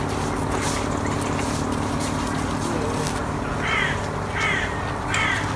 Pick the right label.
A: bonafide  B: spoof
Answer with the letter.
A